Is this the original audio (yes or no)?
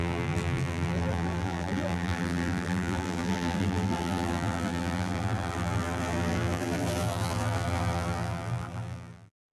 no